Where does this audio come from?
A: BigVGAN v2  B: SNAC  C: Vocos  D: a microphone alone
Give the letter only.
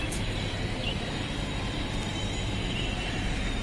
D